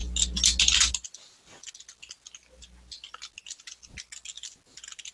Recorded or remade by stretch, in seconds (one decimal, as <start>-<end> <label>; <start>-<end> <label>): 0.0-5.1 recorded

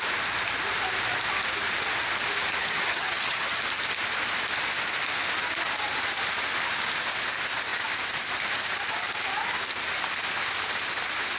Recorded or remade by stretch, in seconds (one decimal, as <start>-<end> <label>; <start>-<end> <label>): 0.0-2.6 recorded; 2.6-3.6 remade; 3.6-11.4 recorded

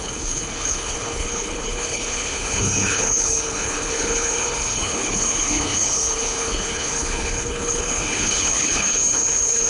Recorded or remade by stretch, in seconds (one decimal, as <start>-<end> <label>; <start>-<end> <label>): 0.0-9.7 remade

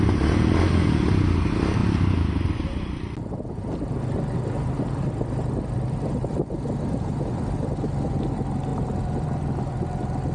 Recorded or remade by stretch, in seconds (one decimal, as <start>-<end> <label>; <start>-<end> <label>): 0.0-10.3 recorded

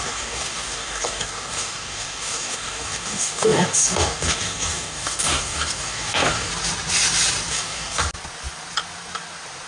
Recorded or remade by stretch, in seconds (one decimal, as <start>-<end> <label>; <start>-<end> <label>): 0.0-6.5 remade; 6.5-7.5 recorded; 7.5-8.0 remade; 8.0-9.7 recorded

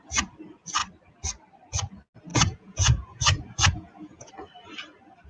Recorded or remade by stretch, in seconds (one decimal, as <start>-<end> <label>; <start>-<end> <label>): 0.0-2.3 recorded; 2.3-4.3 remade; 4.3-5.3 recorded